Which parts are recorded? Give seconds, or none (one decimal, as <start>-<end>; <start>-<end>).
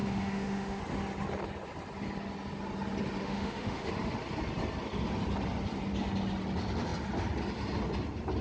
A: 0.8-3.2; 3.9-8.4